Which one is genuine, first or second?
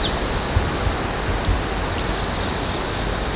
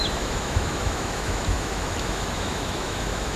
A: first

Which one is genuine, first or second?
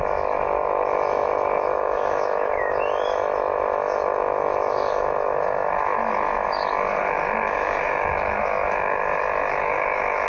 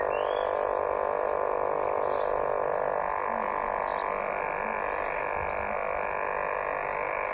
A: second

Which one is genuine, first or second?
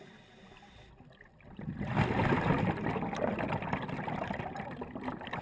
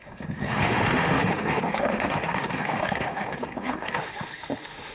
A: first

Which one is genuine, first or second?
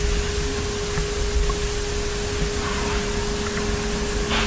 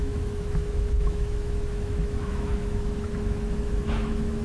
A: first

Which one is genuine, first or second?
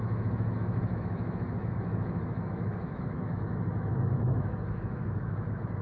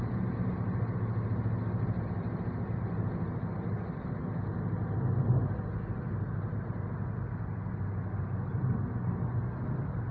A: second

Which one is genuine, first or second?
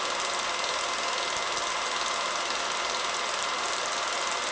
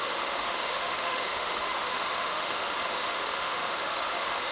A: first